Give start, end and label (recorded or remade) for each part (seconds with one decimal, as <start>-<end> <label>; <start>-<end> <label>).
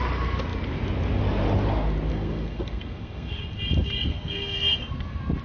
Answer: 0.0-2.1 recorded; 2.1-3.4 remade; 3.4-4.1 recorded; 4.1-4.9 remade; 4.9-5.4 recorded